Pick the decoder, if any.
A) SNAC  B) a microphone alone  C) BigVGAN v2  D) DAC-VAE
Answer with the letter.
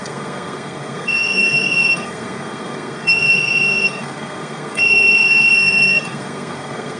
A